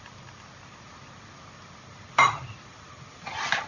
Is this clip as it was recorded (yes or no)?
yes